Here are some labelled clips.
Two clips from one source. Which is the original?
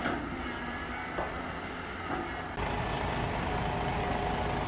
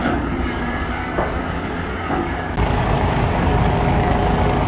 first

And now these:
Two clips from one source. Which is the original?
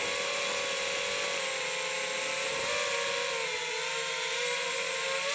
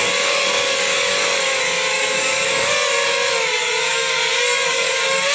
first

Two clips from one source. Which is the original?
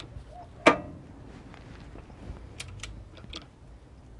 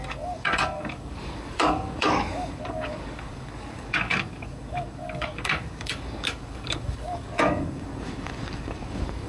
first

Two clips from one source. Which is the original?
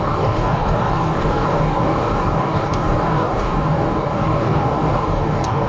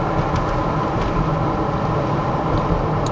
second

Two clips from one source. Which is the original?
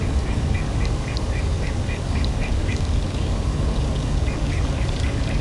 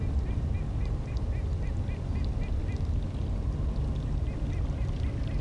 second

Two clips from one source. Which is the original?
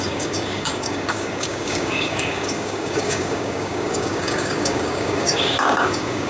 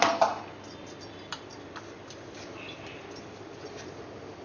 second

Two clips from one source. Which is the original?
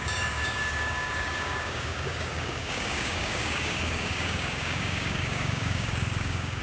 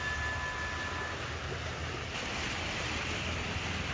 second